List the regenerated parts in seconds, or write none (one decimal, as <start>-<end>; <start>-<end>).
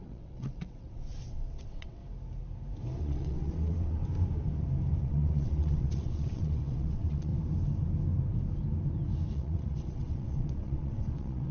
0.0-2.0; 3.0-4.0; 5.0-7.3; 9.3-11.5